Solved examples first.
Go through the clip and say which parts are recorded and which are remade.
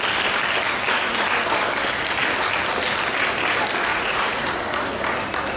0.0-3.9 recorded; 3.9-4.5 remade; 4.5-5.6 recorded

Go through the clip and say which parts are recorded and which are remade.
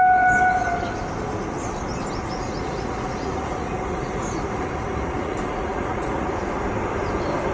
0.0-2.2 recorded; 2.2-6.3 remade; 6.3-7.5 recorded